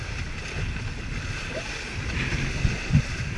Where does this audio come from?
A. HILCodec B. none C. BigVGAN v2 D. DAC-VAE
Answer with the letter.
B